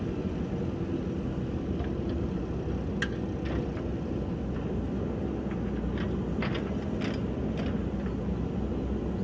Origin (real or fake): real